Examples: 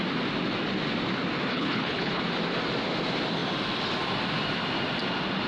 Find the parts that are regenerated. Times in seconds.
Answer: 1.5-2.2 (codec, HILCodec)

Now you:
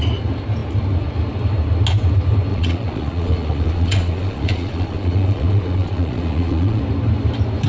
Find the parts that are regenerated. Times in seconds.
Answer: 2.5-6.8 (vocoder, Vocos)

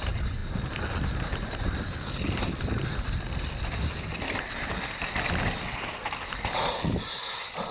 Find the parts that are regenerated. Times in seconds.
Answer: none

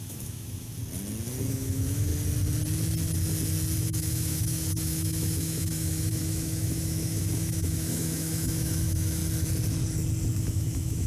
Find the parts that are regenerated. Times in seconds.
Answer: 0.0-0.8 (autoencoder, DAC-VAE); 1.5-2.1; 3.8-9.2; 10.4-11.1

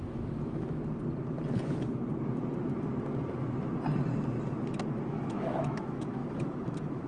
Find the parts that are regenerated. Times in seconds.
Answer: 0.0-0.8 (autoencoder, DAC-VAE); 5.1-7.1

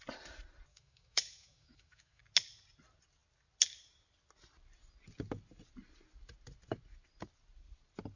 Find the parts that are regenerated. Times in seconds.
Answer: 0.7-2.2 (autoencoder, DAC-VAE)